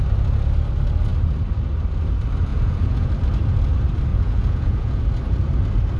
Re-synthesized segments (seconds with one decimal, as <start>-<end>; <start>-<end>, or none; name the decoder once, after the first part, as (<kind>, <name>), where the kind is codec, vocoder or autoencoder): 2.5-3.1 (vocoder, Vocos); 4.1-5.0